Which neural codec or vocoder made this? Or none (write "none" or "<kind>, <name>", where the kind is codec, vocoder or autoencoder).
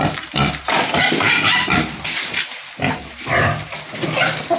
vocoder, BigVGAN v2